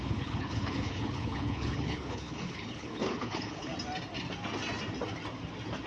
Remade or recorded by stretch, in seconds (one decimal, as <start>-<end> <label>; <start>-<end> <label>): 0.0-3.7 remade; 3.7-5.9 recorded

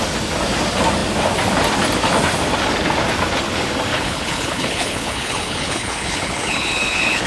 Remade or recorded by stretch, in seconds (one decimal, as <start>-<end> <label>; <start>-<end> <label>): 0.0-3.9 recorded; 3.9-7.3 remade

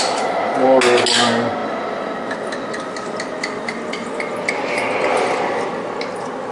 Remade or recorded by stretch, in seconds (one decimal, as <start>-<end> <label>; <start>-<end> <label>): 0.0-6.5 recorded

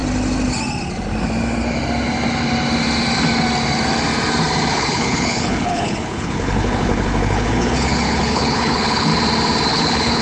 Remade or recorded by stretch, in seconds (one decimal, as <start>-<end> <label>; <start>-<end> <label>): 0.0-4.7 recorded; 4.7-9.1 remade; 9.1-9.7 recorded; 9.7-10.2 remade

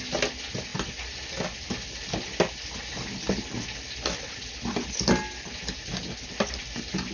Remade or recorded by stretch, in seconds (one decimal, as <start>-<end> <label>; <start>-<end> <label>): 0.0-7.1 recorded

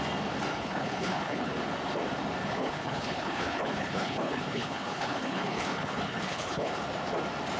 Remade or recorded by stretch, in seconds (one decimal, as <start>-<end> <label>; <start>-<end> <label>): 0.0-0.5 recorded; 0.5-1.5 remade; 1.5-2.4 recorded; 2.4-6.7 remade; 6.7-7.6 recorded

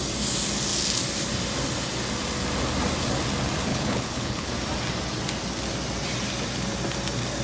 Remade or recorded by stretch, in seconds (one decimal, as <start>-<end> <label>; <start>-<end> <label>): 0.0-3.7 recorded; 3.7-4.5 remade; 4.5-7.4 recorded

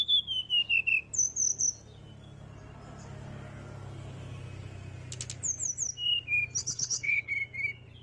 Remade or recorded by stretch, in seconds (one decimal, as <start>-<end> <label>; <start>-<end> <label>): 0.0-6.6 recorded; 6.6-7.3 remade; 7.3-8.0 recorded